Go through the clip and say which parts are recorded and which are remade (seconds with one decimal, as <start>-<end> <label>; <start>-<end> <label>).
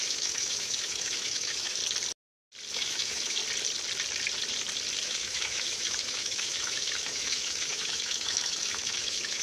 0.0-1.8 remade; 1.8-2.7 recorded; 2.7-3.4 remade; 3.4-5.0 recorded; 5.0-9.4 remade